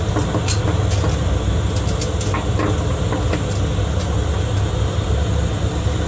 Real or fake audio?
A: real